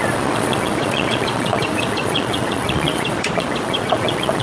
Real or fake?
fake